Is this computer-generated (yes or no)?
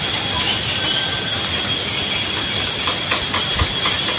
no